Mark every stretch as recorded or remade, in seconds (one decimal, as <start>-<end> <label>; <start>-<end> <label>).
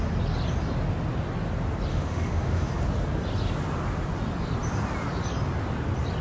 0.0-1.9 recorded; 1.9-2.7 remade; 2.7-6.2 recorded